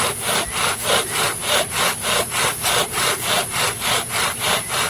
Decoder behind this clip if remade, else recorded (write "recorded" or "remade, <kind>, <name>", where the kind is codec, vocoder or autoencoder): recorded